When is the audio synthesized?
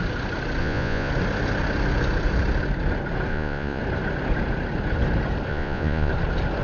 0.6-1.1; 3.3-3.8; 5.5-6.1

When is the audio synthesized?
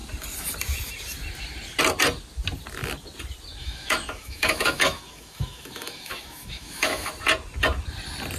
3.6-7.1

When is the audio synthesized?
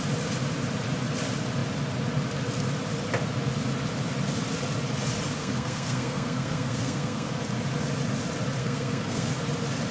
5.4-7.3; 8.6-9.3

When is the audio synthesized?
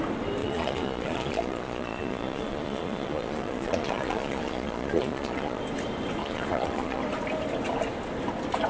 0.4-5.6; 6.2-7.0